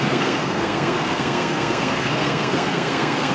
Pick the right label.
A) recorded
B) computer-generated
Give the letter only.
B